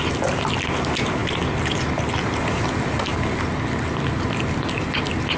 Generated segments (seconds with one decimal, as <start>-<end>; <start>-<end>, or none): none